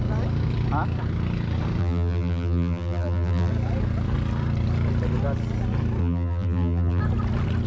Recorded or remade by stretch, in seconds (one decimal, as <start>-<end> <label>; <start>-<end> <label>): 0.0-1.8 recorded; 1.8-3.5 remade; 3.5-6.0 recorded; 6.0-7.0 remade; 7.0-7.7 recorded